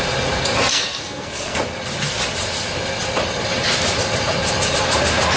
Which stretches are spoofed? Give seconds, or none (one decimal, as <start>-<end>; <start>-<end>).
0.7-1.6